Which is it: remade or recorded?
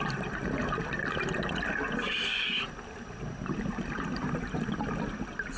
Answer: recorded